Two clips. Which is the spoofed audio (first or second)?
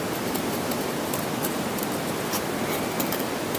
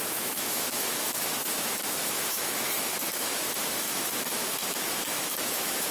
second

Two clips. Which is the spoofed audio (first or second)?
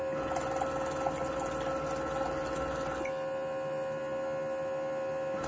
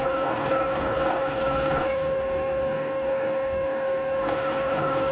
second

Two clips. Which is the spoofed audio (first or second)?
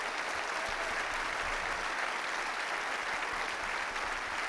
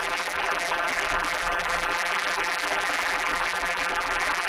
second